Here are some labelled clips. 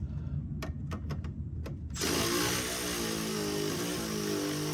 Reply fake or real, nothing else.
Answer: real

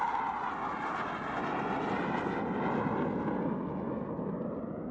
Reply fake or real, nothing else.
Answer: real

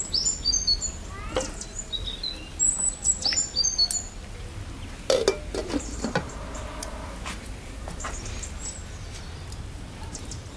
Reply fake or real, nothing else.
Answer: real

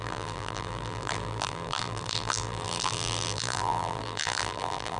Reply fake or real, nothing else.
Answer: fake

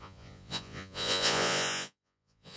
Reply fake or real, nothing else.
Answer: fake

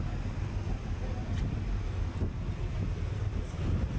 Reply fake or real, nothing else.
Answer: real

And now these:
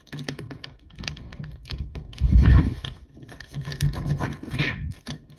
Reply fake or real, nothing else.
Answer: fake